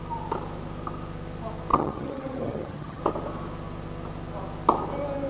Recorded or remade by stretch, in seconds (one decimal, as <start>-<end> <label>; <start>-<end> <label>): 0.0-1.7 recorded; 1.7-3.0 remade; 3.0-5.3 recorded